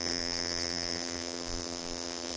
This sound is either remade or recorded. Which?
remade